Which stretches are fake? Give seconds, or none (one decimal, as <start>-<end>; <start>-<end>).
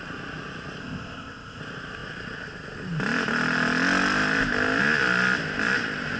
0.8-1.6